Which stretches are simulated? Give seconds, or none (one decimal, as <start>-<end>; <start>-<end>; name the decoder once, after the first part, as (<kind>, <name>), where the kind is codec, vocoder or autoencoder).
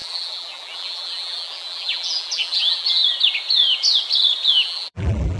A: 0.0-3.0 (vocoder, BigVGAN v2); 4.5-5.4